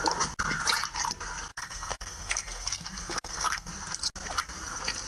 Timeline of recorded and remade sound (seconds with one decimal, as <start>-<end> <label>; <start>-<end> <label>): 0.0-1.5 recorded; 1.5-3.7 remade; 3.7-5.1 recorded